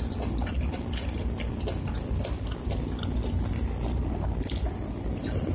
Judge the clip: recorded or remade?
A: recorded